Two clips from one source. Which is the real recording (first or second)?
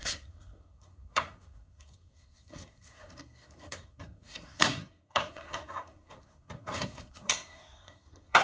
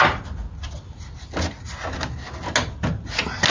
second